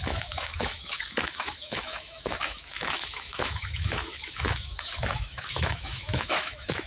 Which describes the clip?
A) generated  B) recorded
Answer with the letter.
A